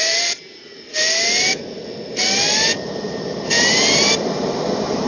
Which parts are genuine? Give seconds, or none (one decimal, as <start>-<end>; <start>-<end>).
0.9-3.0